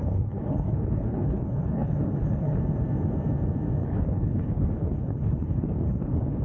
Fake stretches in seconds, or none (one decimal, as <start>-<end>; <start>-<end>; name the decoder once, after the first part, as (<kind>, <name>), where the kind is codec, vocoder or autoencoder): 0.0-2.6 (codec, HILCodec); 3.8-6.4

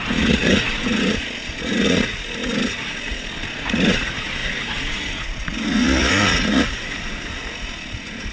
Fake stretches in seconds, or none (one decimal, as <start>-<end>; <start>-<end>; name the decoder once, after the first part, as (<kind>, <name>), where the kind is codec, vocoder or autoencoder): 0.0-8.3 (vocoder, Vocos)

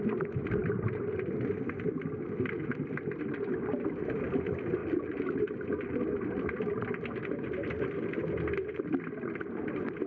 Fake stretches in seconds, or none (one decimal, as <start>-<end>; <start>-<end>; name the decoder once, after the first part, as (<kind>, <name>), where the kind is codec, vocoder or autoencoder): none

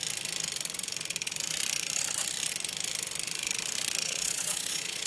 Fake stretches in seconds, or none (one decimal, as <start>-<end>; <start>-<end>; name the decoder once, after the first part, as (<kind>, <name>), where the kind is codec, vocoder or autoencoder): 4.0-5.1 (vocoder, Vocos)

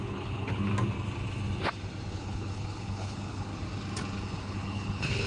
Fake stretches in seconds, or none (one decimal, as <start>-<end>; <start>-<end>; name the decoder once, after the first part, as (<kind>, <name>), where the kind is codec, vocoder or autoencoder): 0.0-0.7 (codec, HILCodec); 2.1-3.5; 4.2-5.3

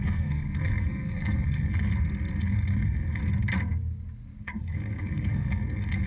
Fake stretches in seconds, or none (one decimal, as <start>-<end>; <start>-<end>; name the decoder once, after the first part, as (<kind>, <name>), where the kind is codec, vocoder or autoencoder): 0.0-1.9 (codec, SNAC); 2.4-3.2; 4.4-6.1